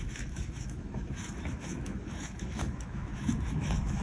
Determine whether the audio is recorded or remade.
remade